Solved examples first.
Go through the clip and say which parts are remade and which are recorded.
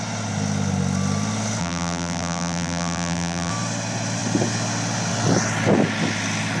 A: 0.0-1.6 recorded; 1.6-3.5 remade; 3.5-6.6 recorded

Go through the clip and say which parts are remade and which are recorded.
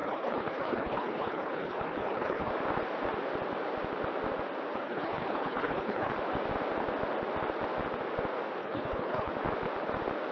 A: 0.0-2.5 remade; 2.5-4.7 recorded; 4.7-6.1 remade; 6.1-8.6 recorded; 8.6-9.3 remade; 9.3-10.3 recorded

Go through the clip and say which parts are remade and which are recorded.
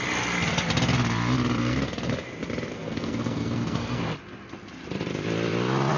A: 0.0-1.6 recorded; 1.6-2.1 remade; 2.1-2.7 recorded; 2.7-4.0 remade; 4.0-6.0 recorded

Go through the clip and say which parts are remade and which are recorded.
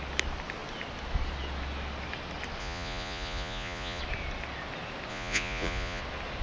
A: 0.0-2.6 recorded; 2.6-4.0 remade; 4.0-5.1 recorded; 5.1-6.0 remade; 6.0-6.4 recorded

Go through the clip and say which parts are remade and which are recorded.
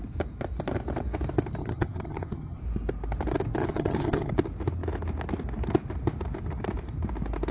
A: 0.0-1.6 recorded; 1.6-2.6 remade; 2.6-3.6 recorded; 3.6-4.3 remade; 4.3-7.5 recorded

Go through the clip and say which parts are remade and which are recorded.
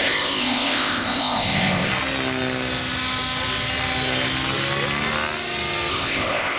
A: 0.0-1.9 remade; 1.9-5.9 recorded; 5.9-6.6 remade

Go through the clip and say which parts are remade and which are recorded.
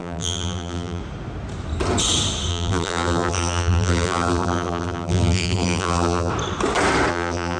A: 0.0-1.0 remade; 1.0-2.5 recorded; 2.5-6.3 remade; 6.3-7.1 recorded; 7.1-7.6 remade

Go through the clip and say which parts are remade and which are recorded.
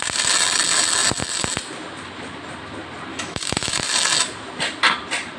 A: 0.0-3.1 recorded; 3.1-3.8 remade; 3.8-5.4 recorded